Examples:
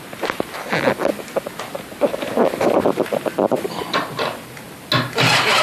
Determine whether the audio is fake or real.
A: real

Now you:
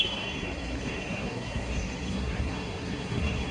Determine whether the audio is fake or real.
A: fake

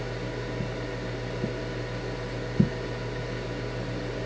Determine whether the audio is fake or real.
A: real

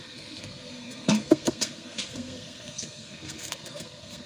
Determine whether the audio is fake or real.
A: fake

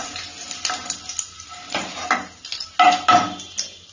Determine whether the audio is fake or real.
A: real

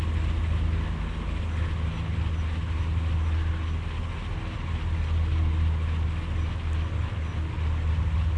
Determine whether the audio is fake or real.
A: real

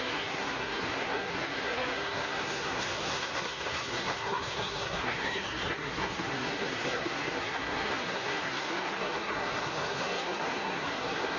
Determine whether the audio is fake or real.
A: fake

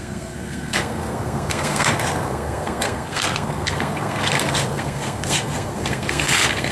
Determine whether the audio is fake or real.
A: fake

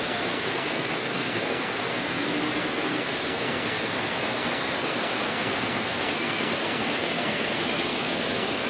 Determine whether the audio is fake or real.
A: fake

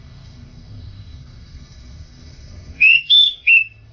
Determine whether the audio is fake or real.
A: fake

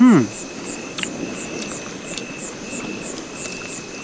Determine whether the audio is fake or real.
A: real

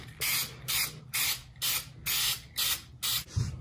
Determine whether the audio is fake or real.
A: real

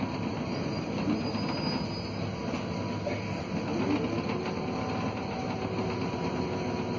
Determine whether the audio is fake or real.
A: real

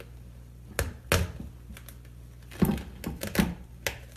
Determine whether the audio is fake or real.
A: real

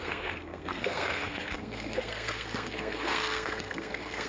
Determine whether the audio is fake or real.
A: fake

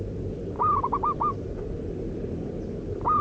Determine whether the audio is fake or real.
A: real